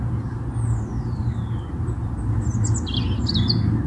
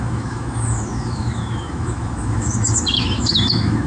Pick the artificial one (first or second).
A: second